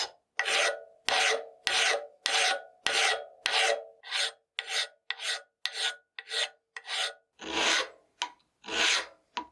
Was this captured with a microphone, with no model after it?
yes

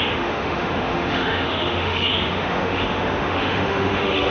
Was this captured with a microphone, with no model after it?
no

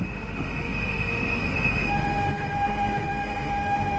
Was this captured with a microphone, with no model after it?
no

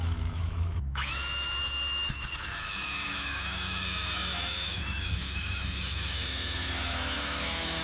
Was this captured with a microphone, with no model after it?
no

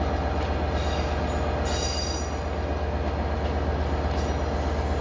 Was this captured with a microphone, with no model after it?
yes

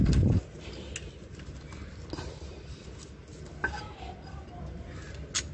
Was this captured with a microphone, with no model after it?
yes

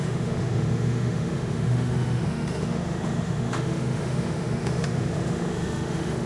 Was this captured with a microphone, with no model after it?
no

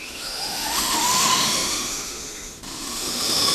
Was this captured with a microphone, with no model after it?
no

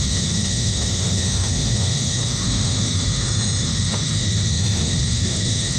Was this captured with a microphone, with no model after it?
no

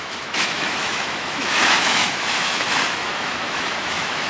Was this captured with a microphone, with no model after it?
no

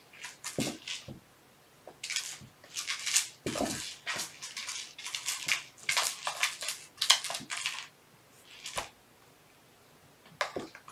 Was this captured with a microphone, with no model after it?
yes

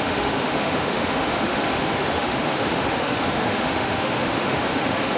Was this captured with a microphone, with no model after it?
no